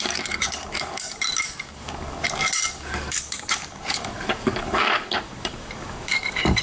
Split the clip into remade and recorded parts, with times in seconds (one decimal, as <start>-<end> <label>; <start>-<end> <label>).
0.0-6.6 remade